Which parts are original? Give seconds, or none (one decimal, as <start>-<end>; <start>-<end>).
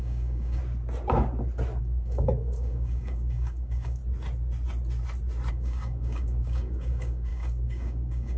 0.6-1.8; 4.0-5.5